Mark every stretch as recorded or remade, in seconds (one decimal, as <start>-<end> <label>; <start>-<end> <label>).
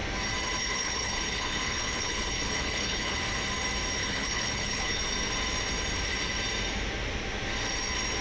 0.0-0.6 recorded; 0.6-3.2 remade; 3.2-4.0 recorded; 4.0-5.0 remade; 5.0-8.2 recorded